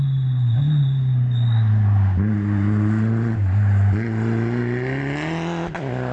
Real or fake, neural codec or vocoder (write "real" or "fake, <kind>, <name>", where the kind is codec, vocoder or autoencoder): real